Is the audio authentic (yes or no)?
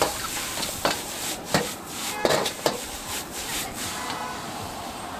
no